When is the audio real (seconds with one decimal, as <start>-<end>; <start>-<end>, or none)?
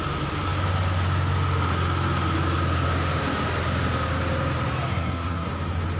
0.0-4.9; 5.5-6.0